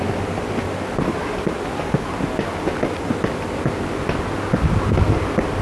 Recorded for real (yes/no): yes